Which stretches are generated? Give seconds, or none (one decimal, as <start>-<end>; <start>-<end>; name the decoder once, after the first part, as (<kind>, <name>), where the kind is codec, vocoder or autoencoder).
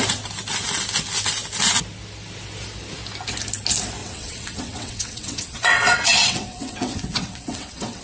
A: 4.0-8.0 (vocoder, WaveNeXt)